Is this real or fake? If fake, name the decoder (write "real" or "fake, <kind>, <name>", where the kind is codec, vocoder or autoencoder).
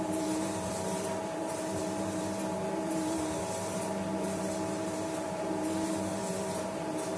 fake, vocoder, BigVGAN v2